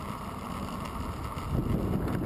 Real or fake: real